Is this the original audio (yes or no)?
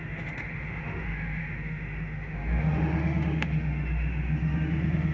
no